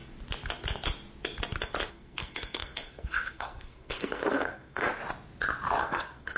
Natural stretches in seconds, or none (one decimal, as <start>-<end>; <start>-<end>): 0.0-1.9; 5.0-5.8